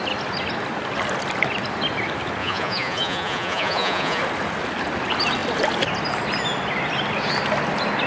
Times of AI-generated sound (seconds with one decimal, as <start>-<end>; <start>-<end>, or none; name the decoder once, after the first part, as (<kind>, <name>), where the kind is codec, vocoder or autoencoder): 2.4-4.2 (vocoder, Vocos)